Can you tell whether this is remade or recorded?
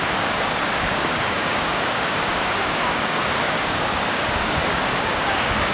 remade